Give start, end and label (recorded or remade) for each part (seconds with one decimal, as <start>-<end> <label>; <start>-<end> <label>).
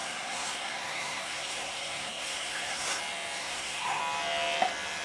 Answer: 0.0-3.0 remade; 3.0-3.4 recorded; 3.4-4.0 remade; 4.0-5.0 recorded